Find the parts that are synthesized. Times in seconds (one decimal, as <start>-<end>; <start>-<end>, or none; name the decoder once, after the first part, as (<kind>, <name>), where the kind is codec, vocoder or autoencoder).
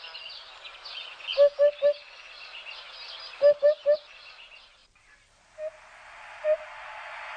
none